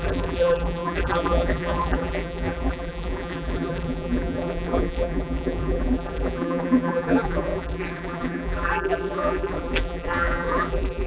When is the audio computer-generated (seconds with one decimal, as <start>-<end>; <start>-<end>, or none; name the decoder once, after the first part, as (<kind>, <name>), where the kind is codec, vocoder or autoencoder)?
0.0-11.1 (vocoder, BigVGAN v2)

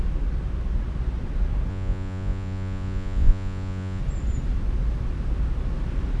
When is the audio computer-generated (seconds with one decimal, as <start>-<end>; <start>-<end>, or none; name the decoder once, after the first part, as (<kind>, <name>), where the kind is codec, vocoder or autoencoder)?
1.7-4.0 (vocoder, Vocos)

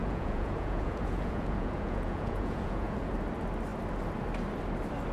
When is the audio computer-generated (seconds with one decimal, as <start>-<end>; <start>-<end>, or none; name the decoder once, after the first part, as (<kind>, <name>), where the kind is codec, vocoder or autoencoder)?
0.0-3.1 (vocoder, Vocos)